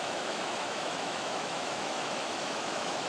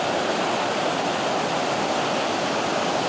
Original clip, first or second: second